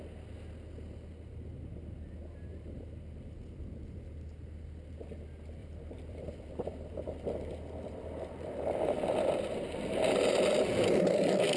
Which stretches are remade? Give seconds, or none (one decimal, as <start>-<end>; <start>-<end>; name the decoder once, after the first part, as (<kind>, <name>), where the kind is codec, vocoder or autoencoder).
5.6-10.1 (vocoder, BigVGAN v2)